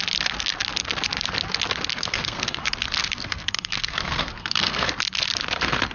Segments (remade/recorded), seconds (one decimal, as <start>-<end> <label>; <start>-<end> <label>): 0.0-1.9 recorded; 1.9-2.6 remade; 2.6-3.0 recorded; 3.0-4.9 remade; 4.9-5.9 recorded